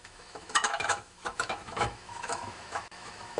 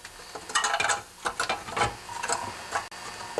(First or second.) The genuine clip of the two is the second